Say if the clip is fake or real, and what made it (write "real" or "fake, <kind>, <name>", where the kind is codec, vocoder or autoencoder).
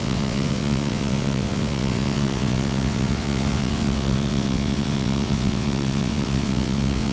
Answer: fake, vocoder, WaveNeXt